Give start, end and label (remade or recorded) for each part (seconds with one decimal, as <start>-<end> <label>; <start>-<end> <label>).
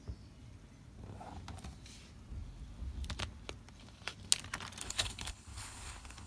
0.0-4.8 recorded; 4.8-6.3 remade